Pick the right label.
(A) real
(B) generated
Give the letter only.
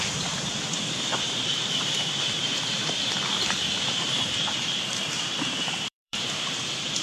B